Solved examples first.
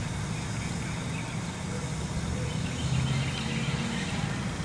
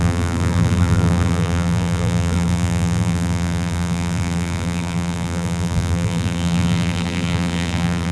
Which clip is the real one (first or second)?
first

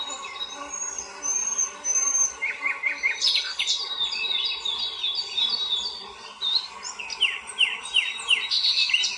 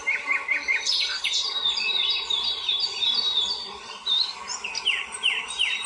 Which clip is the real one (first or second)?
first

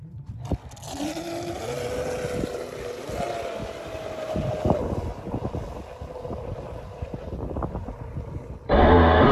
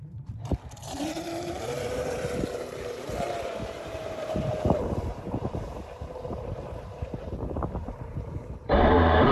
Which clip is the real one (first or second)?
first